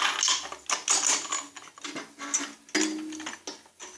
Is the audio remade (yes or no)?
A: no